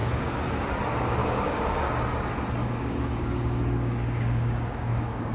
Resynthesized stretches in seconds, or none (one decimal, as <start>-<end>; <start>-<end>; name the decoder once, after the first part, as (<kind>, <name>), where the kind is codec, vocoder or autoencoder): 0.0-0.7 (codec, DAC); 1.2-1.8; 2.6-5.3